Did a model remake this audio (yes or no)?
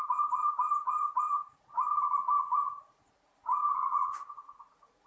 yes